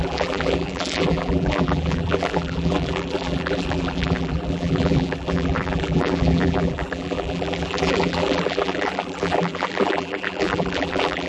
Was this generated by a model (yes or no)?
yes